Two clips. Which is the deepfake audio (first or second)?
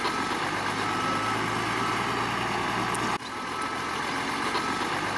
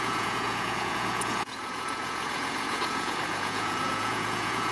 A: second